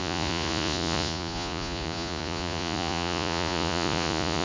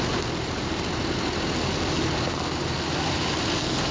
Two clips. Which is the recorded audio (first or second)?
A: second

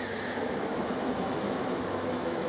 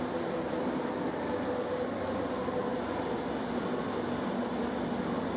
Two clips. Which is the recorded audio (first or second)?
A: second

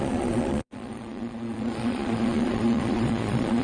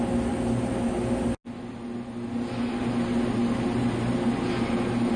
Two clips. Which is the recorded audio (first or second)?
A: second